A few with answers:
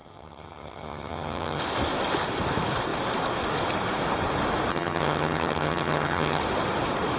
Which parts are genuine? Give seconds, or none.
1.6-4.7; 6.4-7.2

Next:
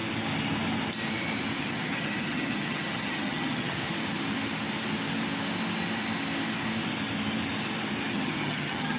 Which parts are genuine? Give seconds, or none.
0.0-1.6; 3.8-8.1

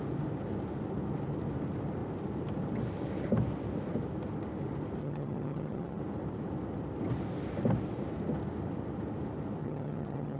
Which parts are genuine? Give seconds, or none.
0.0-5.0; 6.0-9.6

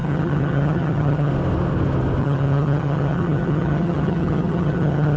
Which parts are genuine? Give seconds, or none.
1.3-2.2

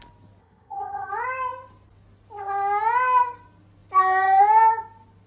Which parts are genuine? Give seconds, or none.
0.0-0.4; 1.1-5.3

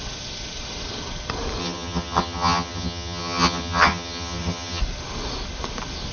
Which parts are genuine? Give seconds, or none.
0.0-1.6; 4.8-6.1

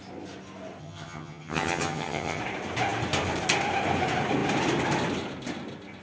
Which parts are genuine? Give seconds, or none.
0.0-0.8; 2.4-6.0